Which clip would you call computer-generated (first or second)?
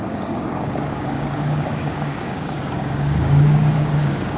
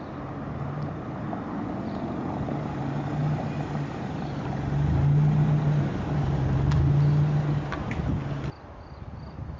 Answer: first